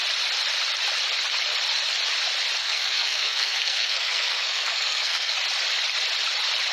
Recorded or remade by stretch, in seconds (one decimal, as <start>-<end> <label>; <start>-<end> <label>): 0.0-2.6 recorded; 2.6-5.3 remade; 5.3-6.7 recorded

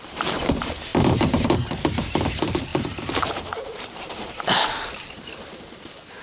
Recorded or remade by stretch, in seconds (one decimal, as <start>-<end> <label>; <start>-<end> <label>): 0.0-6.2 remade

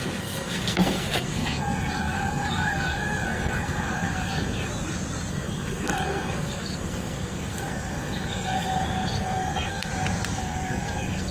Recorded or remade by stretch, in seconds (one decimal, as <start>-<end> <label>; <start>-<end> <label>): 0.0-4.7 remade; 4.7-5.3 recorded; 5.3-9.9 remade; 9.9-10.4 recorded; 10.4-11.3 remade

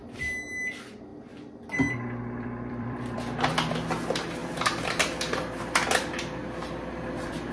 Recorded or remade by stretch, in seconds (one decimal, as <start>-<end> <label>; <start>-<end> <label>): 0.0-1.1 recorded; 1.1-3.7 remade; 3.7-4.4 recorded; 4.4-4.9 remade; 4.9-7.5 recorded

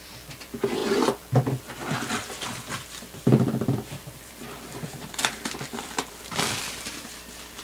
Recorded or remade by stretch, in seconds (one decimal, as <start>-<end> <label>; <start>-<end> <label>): 0.0-7.6 remade

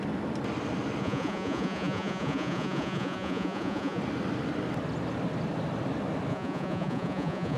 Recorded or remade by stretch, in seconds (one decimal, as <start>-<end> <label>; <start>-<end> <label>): 0.0-1.0 recorded; 1.0-4.0 remade; 4.0-6.3 recorded; 6.3-7.6 remade